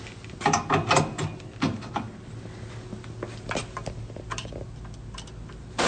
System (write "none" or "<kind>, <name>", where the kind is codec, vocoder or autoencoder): none